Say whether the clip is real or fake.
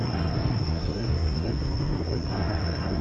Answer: fake